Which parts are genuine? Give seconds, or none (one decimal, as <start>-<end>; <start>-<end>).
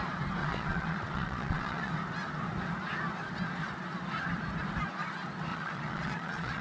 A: 0.0-0.4; 1.9-5.5